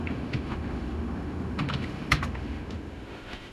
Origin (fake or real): fake